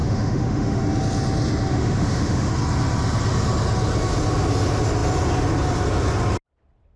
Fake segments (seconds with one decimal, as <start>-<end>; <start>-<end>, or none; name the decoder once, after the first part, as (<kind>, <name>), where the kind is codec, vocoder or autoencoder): 0.0-0.8 (autoencoder, DAC-VAE); 1.7-2.5